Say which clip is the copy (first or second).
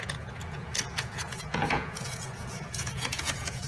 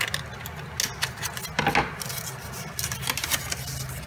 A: first